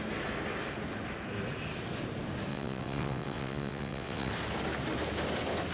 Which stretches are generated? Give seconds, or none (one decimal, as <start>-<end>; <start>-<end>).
2.5-4.3